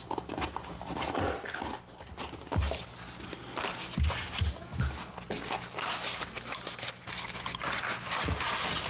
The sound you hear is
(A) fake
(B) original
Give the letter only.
B